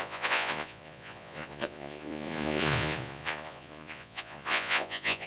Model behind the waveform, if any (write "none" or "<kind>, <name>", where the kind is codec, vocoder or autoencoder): vocoder, Vocos